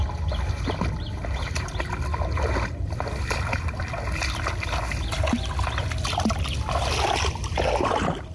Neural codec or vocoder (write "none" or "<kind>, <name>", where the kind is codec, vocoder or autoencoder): none